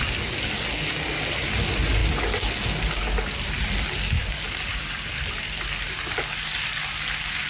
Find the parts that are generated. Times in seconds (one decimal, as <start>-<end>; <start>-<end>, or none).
none